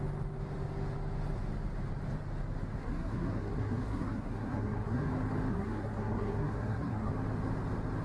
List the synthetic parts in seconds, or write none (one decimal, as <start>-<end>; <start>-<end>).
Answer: 2.8-5.1; 5.5-7.1